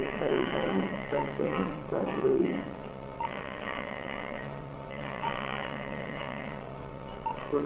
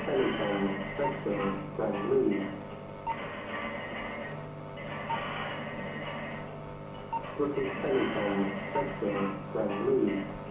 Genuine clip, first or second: second